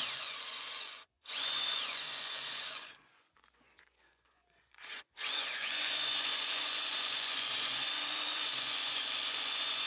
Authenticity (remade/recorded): remade